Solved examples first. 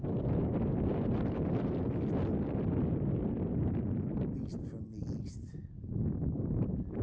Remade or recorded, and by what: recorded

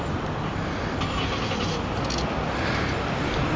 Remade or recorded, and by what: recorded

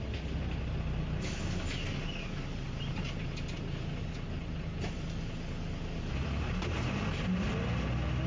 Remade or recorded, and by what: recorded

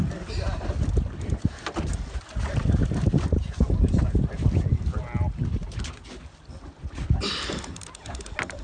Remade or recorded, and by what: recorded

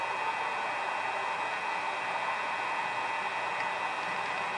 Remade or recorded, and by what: recorded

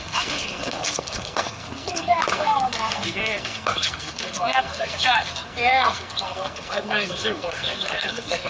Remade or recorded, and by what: remade, codec, SNAC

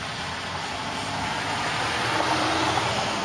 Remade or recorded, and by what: recorded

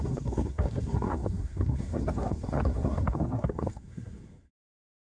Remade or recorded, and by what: remade, codec, SNAC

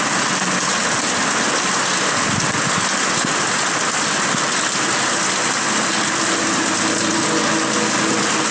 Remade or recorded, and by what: recorded